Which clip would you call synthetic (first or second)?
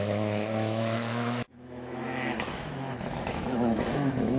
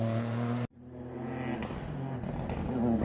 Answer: first